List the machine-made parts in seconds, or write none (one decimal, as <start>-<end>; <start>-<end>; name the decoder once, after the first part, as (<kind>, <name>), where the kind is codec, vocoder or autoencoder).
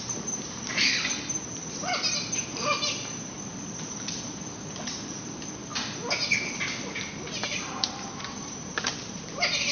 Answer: 0.0-5.7 (vocoder, BigVGAN v2); 7.4-9.7